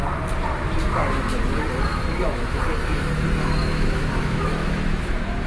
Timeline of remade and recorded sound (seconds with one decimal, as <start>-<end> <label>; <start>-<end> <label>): 0.0-1.9 recorded; 1.9-2.6 remade; 2.6-3.6 recorded; 3.6-5.5 remade